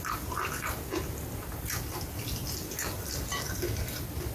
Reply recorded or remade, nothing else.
recorded